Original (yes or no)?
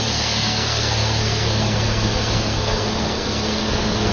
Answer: no